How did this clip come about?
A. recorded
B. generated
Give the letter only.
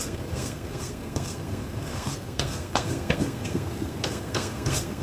B